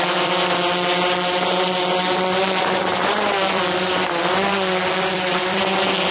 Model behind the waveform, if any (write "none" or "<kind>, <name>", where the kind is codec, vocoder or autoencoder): vocoder, BigVGAN v2